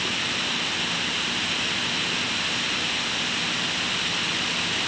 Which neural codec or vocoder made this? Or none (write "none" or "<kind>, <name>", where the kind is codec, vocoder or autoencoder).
none